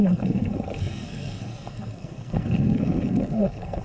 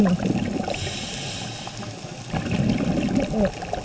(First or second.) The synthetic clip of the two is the first